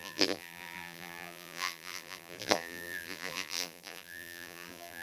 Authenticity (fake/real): fake